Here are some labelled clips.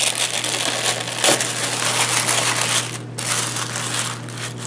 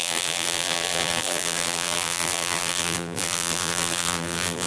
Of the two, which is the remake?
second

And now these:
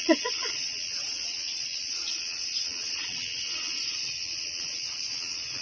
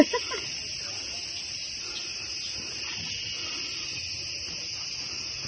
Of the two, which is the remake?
first